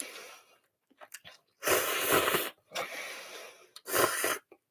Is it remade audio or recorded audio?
remade